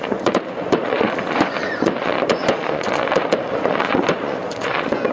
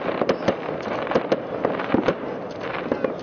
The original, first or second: second